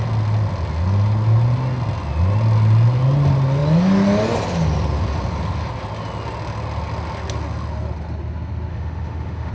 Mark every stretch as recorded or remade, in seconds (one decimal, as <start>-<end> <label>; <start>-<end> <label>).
0.0-8.7 recorded; 8.7-9.5 remade